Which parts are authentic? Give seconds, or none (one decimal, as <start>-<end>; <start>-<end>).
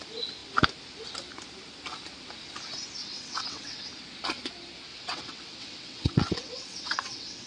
0.0-3.0; 3.9-4.9